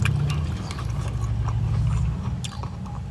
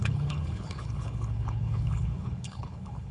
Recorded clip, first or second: first